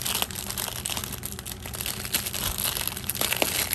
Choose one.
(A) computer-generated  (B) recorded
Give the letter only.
B